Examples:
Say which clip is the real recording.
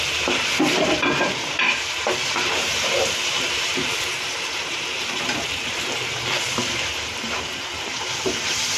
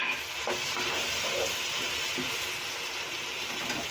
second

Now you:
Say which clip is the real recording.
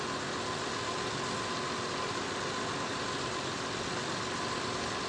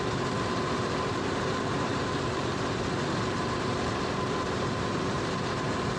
first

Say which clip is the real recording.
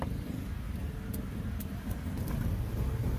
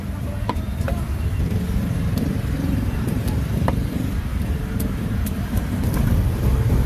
first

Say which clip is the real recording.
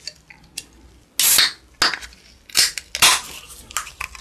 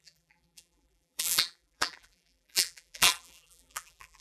first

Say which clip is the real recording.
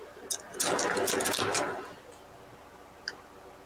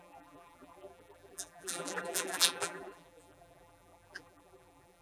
first